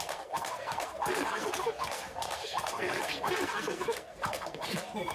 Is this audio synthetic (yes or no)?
yes